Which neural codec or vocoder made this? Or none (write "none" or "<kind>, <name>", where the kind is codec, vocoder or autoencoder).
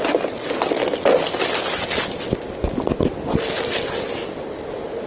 none